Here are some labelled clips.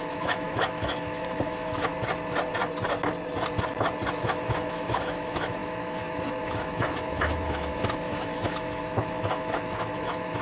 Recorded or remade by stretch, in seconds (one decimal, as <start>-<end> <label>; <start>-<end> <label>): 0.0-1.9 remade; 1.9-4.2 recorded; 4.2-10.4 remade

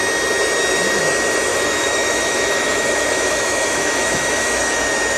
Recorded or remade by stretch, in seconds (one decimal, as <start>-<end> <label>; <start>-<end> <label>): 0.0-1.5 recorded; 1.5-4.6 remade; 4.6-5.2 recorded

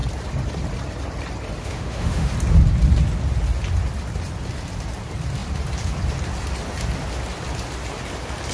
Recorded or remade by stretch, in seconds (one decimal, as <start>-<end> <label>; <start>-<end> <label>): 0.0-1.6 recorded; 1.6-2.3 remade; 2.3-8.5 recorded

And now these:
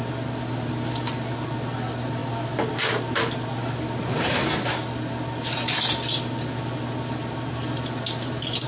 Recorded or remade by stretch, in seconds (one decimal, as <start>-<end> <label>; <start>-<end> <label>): 0.0-8.7 recorded